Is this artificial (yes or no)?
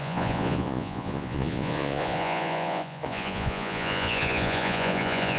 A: yes